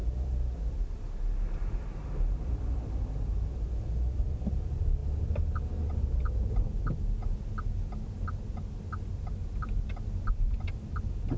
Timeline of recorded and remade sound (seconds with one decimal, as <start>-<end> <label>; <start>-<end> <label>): 0.0-5.0 remade; 5.0-6.5 recorded; 6.5-7.2 remade; 7.2-10.3 recorded; 10.3-11.4 remade